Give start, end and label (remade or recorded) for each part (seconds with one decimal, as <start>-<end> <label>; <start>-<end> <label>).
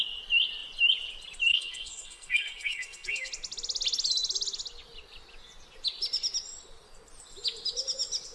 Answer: 0.0-1.5 recorded; 1.5-3.3 remade; 3.3-8.3 recorded